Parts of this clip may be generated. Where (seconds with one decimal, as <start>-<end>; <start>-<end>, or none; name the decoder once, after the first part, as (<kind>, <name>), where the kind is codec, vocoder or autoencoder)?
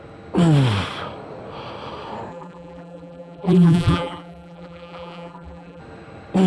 2.3-5.8 (vocoder, BigVGAN v2)